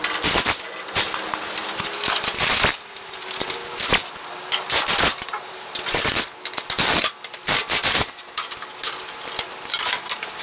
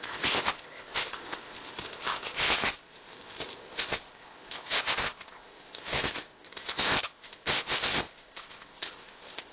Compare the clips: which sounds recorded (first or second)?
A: first